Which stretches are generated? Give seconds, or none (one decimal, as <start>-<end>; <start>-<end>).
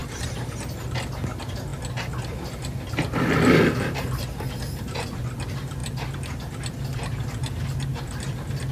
none